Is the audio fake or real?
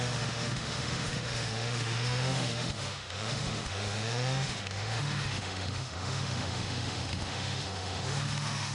fake